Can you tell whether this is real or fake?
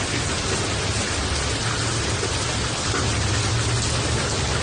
real